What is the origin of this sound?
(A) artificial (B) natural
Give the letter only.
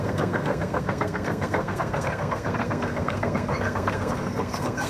A